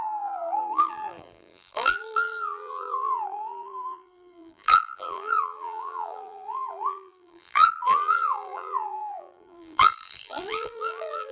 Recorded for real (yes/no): no